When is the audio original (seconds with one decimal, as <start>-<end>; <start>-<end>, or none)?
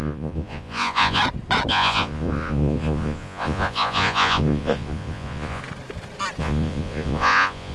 1.2-1.7; 5.6-6.4